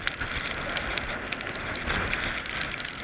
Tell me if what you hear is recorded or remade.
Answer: recorded